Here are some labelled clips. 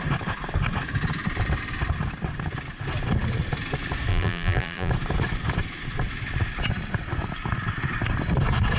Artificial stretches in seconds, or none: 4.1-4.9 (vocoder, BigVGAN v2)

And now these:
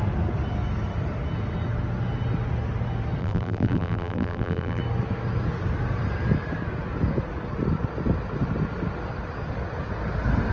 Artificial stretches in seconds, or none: 3.2-4.8 (vocoder, BigVGAN v2)

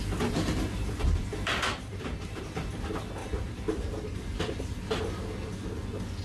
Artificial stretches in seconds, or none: 1.3-2.0 (vocoder, BigVGAN v2); 3.2-4.6

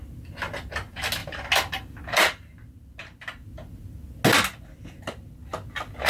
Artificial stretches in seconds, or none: none

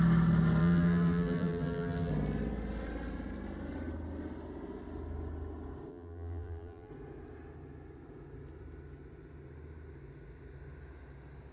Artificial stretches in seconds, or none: 0.6-2.1 (vocoder, BigVGAN v2); 5.9-6.9